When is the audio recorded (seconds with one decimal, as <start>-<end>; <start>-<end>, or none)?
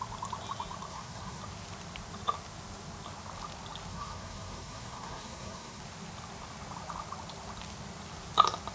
0.0-0.9; 1.4-3.9; 5.8-8.7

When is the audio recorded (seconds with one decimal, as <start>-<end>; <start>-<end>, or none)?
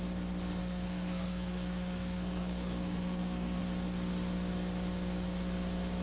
0.0-0.6; 3.6-6.0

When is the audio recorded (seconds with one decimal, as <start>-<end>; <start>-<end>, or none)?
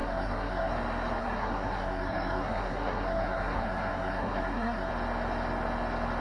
0.7-1.2; 4.9-6.2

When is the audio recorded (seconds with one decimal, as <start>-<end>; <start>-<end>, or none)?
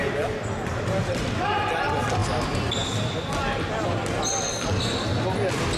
0.0-5.8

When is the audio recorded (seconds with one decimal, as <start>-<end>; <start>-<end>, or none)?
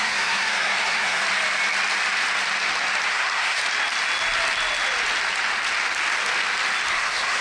1.2-3.1; 3.6-6.9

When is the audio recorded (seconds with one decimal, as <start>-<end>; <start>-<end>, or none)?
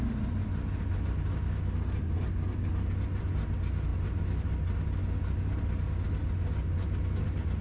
0.0-7.6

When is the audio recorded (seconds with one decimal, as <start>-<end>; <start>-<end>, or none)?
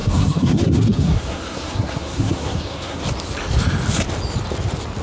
3.0-5.0